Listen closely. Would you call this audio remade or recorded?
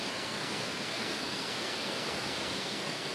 remade